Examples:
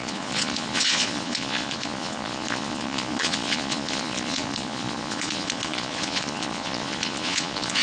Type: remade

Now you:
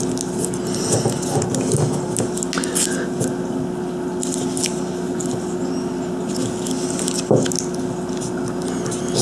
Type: recorded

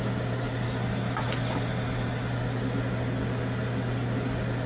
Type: recorded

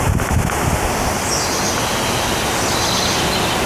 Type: recorded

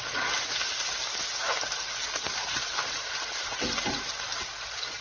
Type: recorded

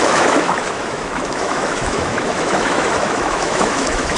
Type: remade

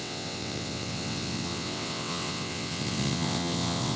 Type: remade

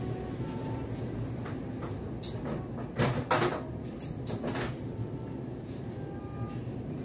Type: recorded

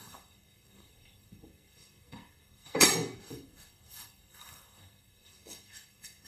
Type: remade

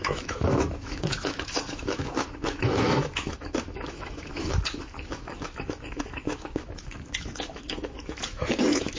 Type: remade